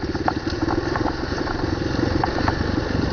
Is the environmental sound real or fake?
fake